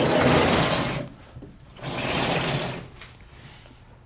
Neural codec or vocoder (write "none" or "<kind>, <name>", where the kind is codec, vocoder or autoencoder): none